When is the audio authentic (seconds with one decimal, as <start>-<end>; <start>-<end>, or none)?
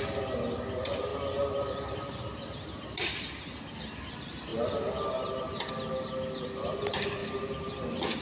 0.0-8.2